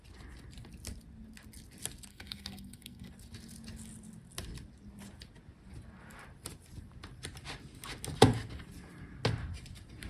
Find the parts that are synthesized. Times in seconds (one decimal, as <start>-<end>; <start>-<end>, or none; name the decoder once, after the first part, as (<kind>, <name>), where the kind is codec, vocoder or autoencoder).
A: 2.1-3.1 (codec, SNAC)